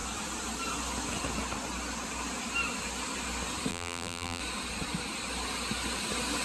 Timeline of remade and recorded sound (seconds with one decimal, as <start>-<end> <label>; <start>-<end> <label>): 0.0-3.7 recorded; 3.7-4.4 remade; 4.4-6.4 recorded